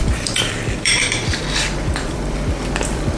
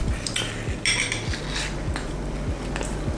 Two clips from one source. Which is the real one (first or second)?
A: second